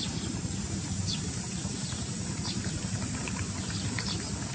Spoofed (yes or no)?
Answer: yes